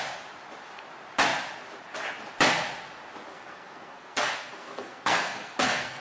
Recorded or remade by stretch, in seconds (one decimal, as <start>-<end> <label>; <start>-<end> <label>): 0.0-3.3 recorded; 3.3-6.0 remade